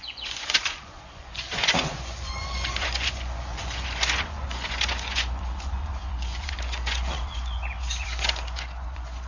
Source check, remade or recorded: remade